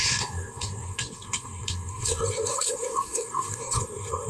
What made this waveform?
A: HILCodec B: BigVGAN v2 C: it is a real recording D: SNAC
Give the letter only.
D